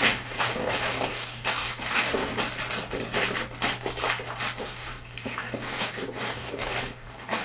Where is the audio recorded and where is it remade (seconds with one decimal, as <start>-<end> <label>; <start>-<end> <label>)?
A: 0.0-2.3 remade; 2.3-4.6 recorded; 4.6-7.4 remade